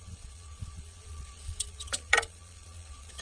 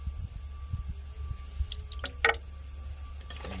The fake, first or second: first